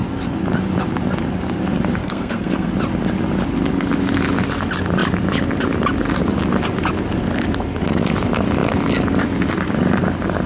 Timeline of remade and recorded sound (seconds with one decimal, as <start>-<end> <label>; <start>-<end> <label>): 0.0-2.0 recorded; 2.0-2.7 remade; 2.7-10.5 recorded